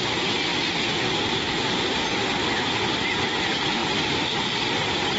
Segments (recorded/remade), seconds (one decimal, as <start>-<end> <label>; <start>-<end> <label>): 0.0-5.2 recorded